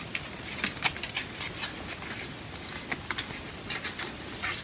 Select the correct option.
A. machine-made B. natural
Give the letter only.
B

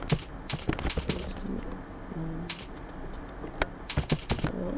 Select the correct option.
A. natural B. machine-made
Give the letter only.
A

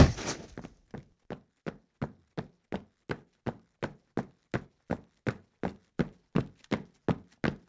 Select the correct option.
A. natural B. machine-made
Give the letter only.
A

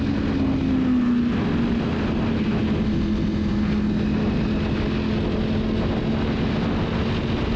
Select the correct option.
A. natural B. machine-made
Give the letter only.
A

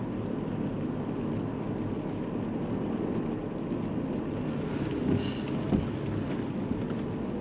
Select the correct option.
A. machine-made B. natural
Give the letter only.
B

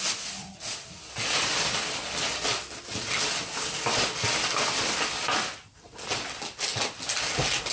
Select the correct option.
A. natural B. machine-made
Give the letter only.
A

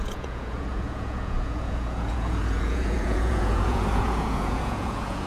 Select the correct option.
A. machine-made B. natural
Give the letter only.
A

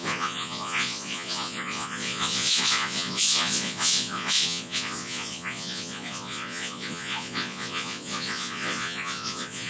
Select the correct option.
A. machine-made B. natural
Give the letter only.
A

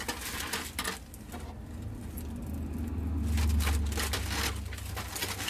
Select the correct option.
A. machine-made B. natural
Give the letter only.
B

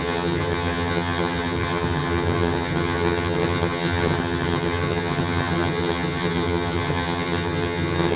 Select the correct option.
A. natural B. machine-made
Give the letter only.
B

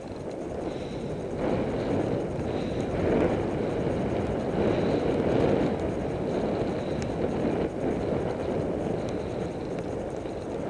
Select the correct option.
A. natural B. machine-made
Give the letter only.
A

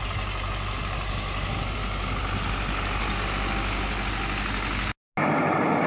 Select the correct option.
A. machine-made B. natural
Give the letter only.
B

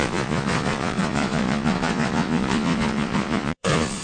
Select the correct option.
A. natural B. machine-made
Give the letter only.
B